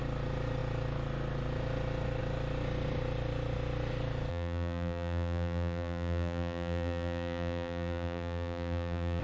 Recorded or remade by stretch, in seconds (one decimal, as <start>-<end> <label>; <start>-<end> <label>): 0.0-4.3 recorded; 4.3-9.2 remade